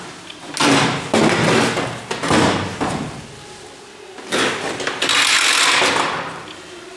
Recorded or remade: recorded